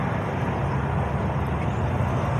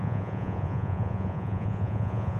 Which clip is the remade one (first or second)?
second